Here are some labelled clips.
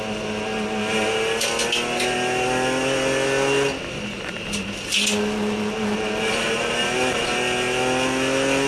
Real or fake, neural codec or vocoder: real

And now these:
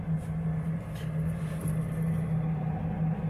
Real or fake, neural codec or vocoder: real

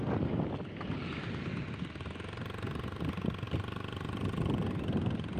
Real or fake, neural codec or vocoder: real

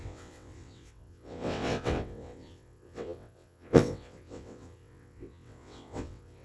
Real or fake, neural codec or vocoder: fake, vocoder, WaveNeXt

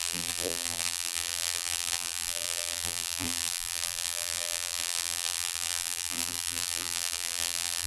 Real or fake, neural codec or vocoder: fake, vocoder, BigVGAN v2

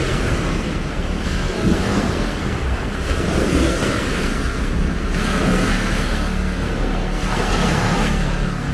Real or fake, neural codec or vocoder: fake, codec, SNAC